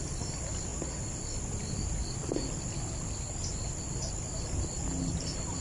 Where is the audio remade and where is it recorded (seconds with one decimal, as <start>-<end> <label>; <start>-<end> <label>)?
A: 0.0-5.6 recorded